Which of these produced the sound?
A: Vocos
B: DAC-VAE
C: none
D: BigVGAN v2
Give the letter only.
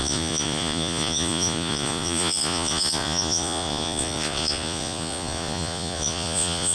A